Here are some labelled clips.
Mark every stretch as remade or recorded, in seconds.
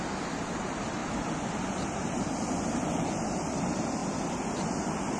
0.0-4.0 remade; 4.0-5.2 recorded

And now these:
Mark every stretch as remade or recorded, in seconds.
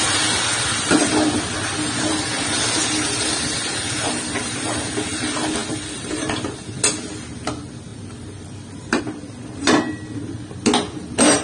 0.0-5.6 recorded; 5.6-6.5 remade; 6.5-7.9 recorded; 7.9-9.0 remade; 9.0-11.4 recorded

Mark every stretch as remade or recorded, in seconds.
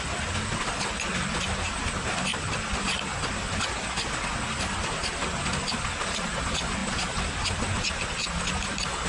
0.0-9.1 recorded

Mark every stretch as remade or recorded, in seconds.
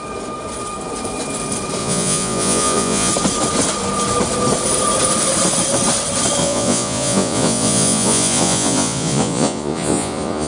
0.0-1.8 recorded; 1.8-3.1 remade; 3.1-6.4 recorded; 6.4-10.5 remade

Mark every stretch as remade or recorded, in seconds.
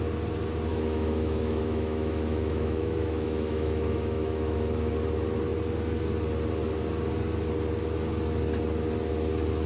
0.0-0.7 recorded; 0.7-4.9 remade; 4.9-9.7 recorded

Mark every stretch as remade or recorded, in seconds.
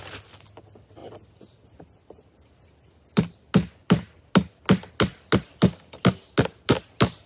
0.0-7.3 recorded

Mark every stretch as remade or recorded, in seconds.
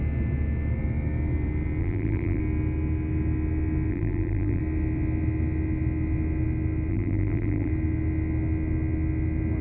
0.0-1.8 recorded; 1.8-2.4 remade; 2.4-3.9 recorded; 3.9-4.6 remade; 4.6-6.9 recorded; 6.9-7.7 remade; 7.7-9.6 recorded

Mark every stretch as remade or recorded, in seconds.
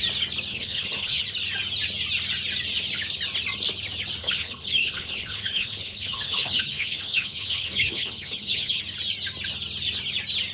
0.0-0.5 recorded; 0.5-1.2 remade; 1.2-4.2 recorded; 4.2-8.8 remade; 8.8-10.5 recorded